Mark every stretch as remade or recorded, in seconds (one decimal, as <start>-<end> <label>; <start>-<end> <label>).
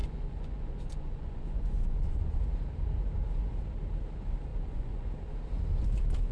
0.0-2.5 remade; 2.5-4.5 recorded; 4.5-5.1 remade; 5.1-6.3 recorded